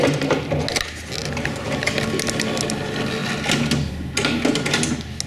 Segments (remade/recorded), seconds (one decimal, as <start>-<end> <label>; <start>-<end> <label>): 0.0-1.2 recorded; 1.2-1.8 remade; 1.8-5.3 recorded

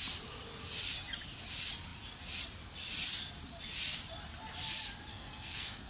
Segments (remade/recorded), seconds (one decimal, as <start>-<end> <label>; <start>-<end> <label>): 0.0-5.1 recorded; 5.1-5.9 remade

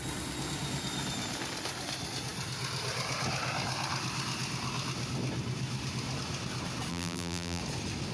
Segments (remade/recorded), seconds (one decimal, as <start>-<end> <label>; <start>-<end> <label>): 0.0-6.9 recorded; 6.9-7.6 remade; 7.6-8.1 recorded

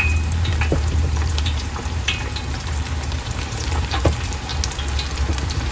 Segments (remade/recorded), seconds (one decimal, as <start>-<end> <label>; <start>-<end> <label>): 0.0-4.5 remade; 4.5-5.7 recorded